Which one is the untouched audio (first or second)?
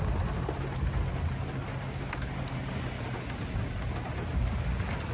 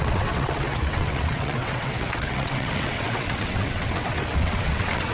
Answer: first